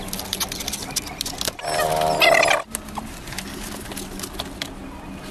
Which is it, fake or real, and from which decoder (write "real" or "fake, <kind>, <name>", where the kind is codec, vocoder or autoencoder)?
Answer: real